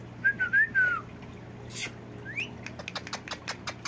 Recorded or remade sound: recorded